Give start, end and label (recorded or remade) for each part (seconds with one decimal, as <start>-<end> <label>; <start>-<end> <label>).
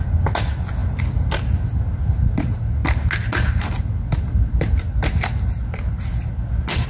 0.0-6.9 recorded